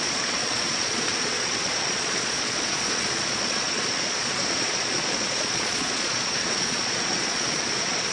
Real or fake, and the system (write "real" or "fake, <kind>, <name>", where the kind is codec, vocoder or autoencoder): fake, vocoder, Vocos